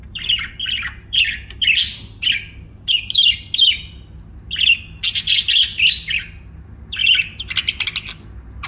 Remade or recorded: recorded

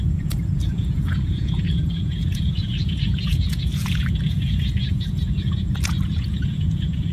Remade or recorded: remade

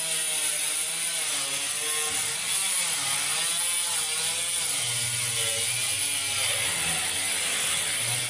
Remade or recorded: recorded